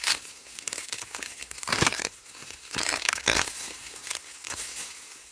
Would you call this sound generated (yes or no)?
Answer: yes